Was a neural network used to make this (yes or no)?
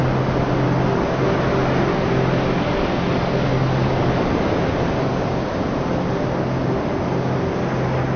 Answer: no